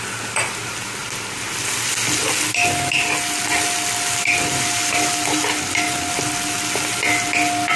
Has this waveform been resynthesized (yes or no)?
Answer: no